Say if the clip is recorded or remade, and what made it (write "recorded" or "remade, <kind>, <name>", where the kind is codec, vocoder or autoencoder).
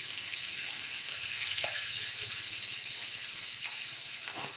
remade, codec, SNAC